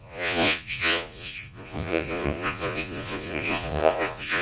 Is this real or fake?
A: fake